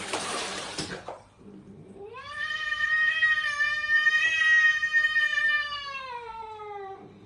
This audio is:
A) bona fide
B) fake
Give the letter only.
B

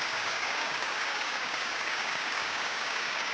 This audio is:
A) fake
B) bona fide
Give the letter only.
A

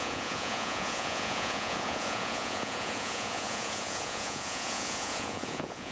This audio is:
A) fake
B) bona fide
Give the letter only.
A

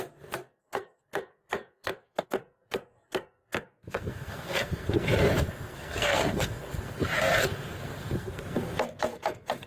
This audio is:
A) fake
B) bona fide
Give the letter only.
A